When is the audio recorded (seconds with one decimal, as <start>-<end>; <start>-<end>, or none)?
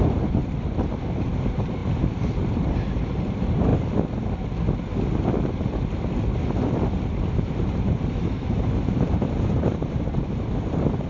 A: 0.4-1.2; 3.7-7.8